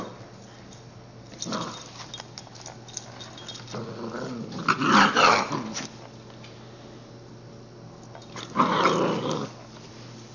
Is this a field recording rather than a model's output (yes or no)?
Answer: yes